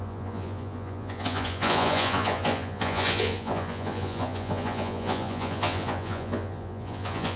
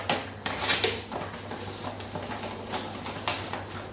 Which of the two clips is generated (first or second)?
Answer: first